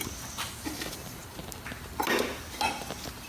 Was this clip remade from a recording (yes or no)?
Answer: no